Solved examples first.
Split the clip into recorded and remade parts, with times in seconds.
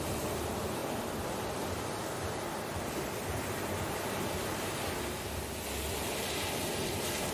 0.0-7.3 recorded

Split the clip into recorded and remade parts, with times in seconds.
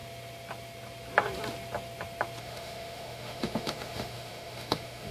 0.0-2.4 recorded; 2.4-5.1 remade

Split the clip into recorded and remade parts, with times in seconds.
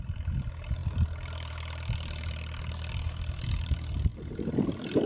0.0-5.1 recorded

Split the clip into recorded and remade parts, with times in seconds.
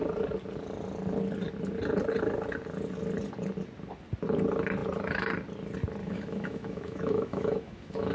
0.0-6.0 recorded; 6.0-8.1 remade